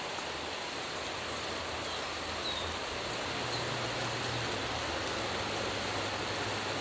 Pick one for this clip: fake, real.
real